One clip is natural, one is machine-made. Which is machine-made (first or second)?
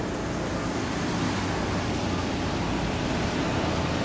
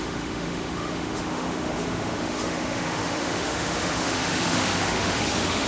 second